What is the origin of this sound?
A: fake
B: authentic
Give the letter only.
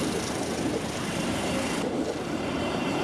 A